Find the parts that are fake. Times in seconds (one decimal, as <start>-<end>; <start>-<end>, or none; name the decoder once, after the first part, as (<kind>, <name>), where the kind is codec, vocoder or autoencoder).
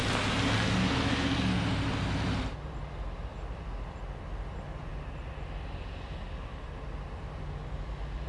none